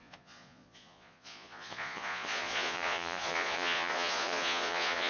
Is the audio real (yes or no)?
no